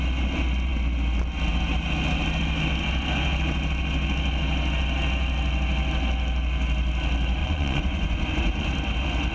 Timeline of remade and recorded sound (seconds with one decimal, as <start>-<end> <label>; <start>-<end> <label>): 0.0-7.4 recorded; 7.4-8.7 remade; 8.7-9.3 recorded